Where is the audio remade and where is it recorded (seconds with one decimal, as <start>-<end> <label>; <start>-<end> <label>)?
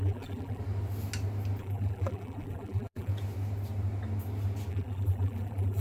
0.0-0.6 remade; 0.6-1.6 recorded; 1.6-3.1 remade; 3.1-4.7 recorded; 4.7-5.8 remade